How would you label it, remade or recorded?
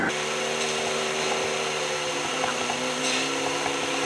recorded